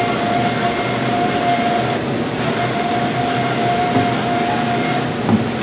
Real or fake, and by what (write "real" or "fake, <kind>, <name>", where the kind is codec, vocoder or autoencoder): real